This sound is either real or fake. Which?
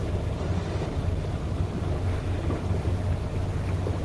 real